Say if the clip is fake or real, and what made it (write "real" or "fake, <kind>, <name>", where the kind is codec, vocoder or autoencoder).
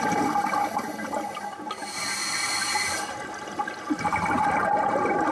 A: real